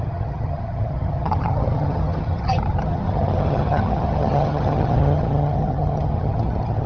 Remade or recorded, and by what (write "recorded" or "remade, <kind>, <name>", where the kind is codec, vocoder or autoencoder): remade, vocoder, HiFi-GAN